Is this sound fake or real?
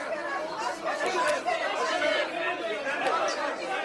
real